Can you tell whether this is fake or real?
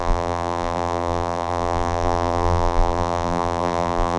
fake